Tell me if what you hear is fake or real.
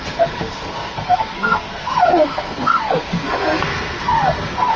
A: fake